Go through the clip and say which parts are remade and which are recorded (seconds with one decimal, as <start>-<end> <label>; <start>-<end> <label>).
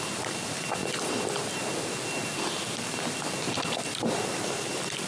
0.0-0.8 remade; 0.8-3.9 recorded; 3.9-5.1 remade